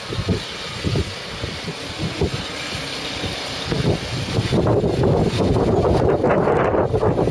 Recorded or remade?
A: recorded